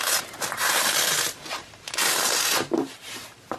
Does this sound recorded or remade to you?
remade